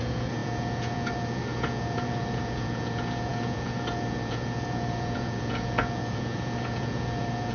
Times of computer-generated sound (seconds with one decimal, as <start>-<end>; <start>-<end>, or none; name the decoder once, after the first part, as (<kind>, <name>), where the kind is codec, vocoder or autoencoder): 0.0-7.5 (vocoder, Vocos)

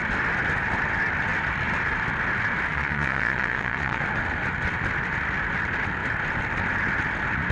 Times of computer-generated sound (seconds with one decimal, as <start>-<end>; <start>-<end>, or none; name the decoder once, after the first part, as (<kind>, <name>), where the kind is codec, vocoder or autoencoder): 2.7-4.0 (vocoder, Vocos)

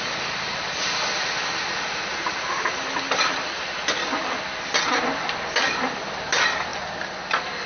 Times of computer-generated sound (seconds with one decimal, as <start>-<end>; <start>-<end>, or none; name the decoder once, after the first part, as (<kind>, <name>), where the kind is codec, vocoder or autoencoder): none

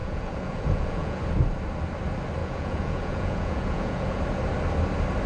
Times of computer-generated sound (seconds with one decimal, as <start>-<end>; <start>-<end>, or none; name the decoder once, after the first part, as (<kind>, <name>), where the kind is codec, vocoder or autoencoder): 0.0-1.2 (vocoder, Vocos); 2.4-4.2

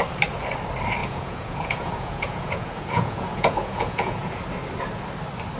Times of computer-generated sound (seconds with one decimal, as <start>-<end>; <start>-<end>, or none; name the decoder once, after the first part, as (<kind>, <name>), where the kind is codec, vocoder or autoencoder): 1.0-4.4 (vocoder, Vocos)

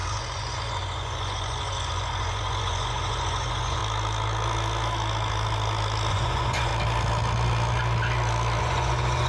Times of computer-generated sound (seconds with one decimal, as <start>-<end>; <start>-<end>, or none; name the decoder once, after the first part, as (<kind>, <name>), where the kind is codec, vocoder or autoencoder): 0.0-3.8 (vocoder, Vocos); 6.1-6.7; 8.6-9.3

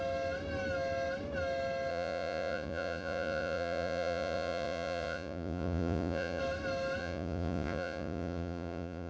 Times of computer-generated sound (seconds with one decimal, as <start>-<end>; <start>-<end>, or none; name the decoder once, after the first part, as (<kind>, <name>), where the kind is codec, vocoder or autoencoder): 1.9-6.4 (vocoder, Vocos); 7.0-9.1